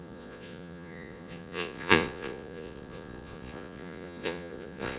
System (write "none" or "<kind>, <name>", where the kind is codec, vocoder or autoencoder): vocoder, Vocos